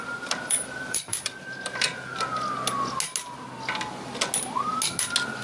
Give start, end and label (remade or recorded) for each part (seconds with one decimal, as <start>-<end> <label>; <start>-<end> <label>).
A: 0.0-1.9 remade; 1.9-5.4 recorded